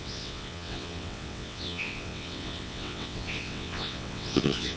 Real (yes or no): no